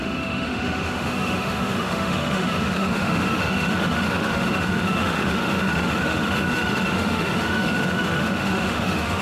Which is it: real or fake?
fake